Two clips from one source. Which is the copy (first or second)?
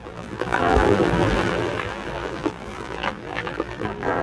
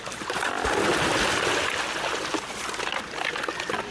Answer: first